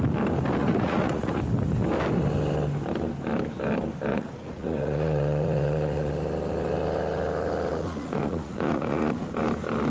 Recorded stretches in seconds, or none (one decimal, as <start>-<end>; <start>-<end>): 0.0-0.6; 1.4-4.1; 6.1-7.7; 9.3-9.9